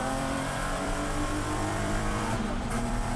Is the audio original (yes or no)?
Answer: no